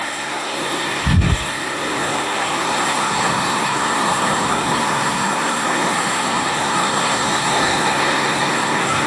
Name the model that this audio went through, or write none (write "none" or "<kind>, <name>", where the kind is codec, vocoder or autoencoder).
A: codec, SNAC